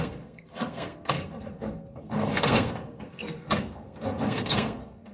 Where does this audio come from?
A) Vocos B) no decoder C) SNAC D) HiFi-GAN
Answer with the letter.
C